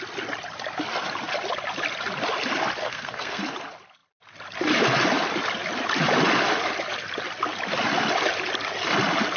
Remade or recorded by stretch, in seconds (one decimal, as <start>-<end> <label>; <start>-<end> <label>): 0.0-2.8 recorded; 2.8-3.4 remade; 3.4-9.4 recorded